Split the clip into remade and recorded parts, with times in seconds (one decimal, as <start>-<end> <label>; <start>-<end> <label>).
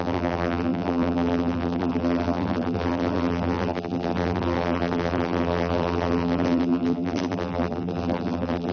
0.0-8.7 remade